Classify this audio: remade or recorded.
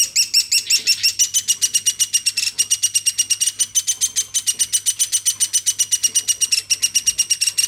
recorded